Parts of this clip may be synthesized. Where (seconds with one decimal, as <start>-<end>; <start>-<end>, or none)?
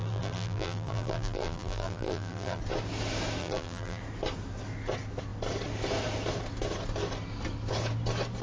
0.0-2.6; 3.4-4.0